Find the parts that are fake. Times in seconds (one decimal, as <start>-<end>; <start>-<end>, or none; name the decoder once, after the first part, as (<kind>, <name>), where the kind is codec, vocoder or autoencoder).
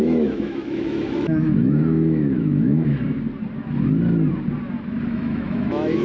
0.0-2.9 (autoencoder, DAC-VAE); 5.1-6.0